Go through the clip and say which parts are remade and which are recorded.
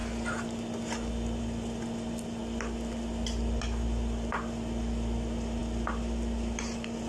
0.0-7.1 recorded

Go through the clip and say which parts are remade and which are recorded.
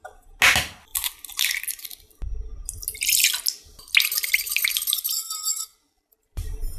0.0-0.9 recorded; 0.9-2.1 remade; 2.1-5.7 recorded; 5.7-6.8 remade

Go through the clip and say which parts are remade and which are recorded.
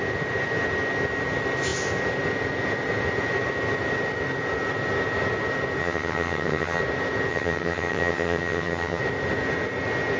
0.0-5.8 recorded; 5.8-6.8 remade; 6.8-7.3 recorded; 7.3-9.0 remade; 9.0-10.2 recorded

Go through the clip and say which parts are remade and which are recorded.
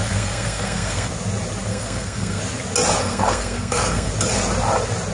0.0-1.1 remade; 1.1-1.7 recorded; 1.7-2.4 remade; 2.4-3.0 recorded; 3.0-4.1 remade; 4.1-5.1 recorded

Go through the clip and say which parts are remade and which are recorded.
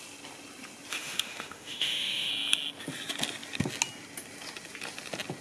0.0-0.9 recorded; 0.9-2.3 remade; 2.3-5.4 recorded